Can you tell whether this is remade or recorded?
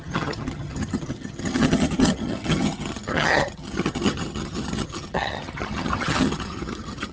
remade